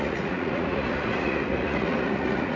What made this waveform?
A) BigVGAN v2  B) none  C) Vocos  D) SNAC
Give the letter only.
C